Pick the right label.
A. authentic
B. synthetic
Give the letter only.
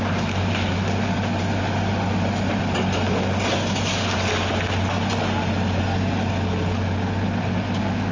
A